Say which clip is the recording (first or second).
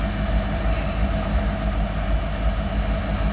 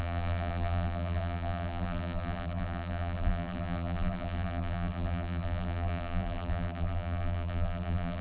first